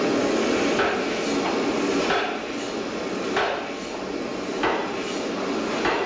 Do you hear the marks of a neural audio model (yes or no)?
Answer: no